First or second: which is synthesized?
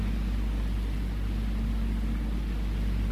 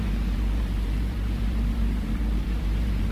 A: second